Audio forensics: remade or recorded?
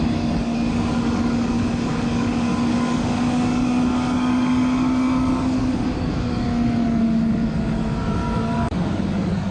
remade